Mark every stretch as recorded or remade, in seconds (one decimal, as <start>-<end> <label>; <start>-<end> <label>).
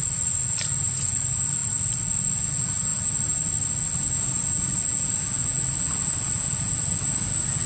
0.0-7.7 recorded